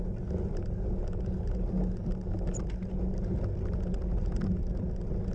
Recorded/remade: recorded